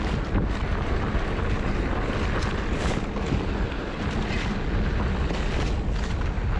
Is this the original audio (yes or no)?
yes